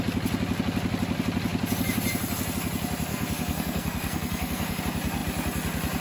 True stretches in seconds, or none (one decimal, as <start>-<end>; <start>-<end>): 0.0-3.1; 4.8-6.0